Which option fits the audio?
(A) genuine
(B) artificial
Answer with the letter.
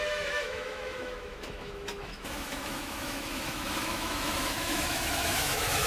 B